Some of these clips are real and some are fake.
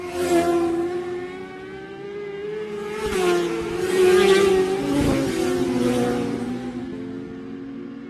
real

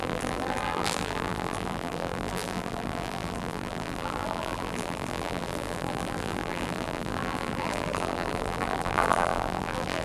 fake